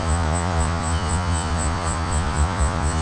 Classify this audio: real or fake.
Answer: fake